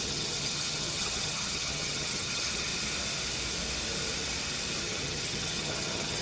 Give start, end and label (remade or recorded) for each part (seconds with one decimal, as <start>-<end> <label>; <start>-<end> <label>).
0.0-2.7 remade; 2.7-4.8 recorded; 4.8-6.2 remade